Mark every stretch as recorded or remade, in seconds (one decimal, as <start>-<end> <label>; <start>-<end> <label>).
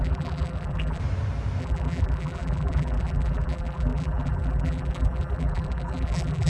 0.0-1.0 remade; 1.0-1.6 recorded; 1.6-6.5 remade